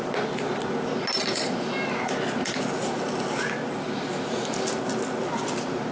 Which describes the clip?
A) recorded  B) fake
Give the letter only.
A